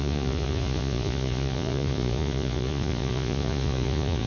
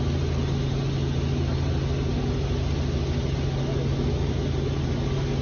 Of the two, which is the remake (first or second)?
first